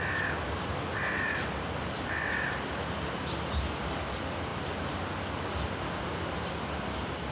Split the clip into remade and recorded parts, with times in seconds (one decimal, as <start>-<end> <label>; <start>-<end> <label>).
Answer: 0.0-7.3 recorded